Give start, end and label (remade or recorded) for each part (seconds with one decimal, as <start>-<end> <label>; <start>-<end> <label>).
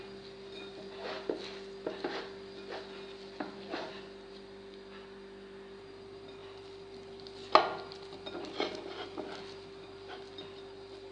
0.0-11.1 recorded